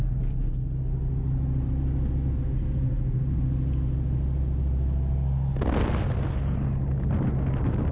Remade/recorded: recorded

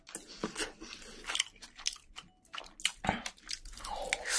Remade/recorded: recorded